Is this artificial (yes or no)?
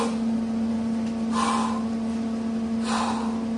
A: yes